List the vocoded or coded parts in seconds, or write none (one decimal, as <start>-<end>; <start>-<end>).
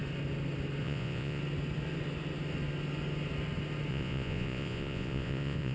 0.8-1.4; 3.9-5.7